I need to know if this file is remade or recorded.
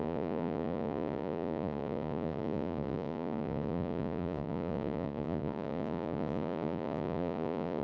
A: remade